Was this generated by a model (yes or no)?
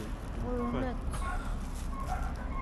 no